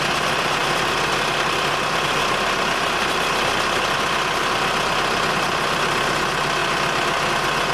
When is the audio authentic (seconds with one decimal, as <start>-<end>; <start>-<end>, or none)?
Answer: 0.0-7.7